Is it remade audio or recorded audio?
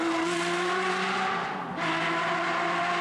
recorded